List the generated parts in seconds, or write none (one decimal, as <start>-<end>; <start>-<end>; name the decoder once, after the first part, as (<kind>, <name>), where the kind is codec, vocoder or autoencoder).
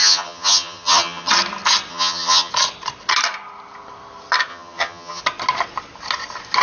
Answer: 0.0-1.3 (vocoder, HiFi-GAN); 1.9-2.5; 4.5-5.2